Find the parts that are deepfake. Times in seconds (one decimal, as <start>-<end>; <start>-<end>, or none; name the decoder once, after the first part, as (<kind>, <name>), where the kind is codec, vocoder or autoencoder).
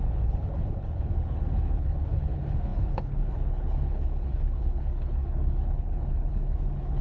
0.0-7.0 (codec, HILCodec)